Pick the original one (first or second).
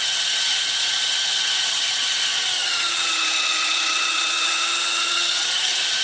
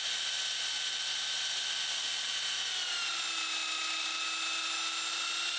second